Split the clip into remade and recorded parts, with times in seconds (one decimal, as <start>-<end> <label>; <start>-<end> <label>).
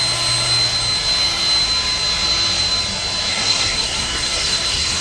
0.0-3.3 recorded; 3.3-5.0 remade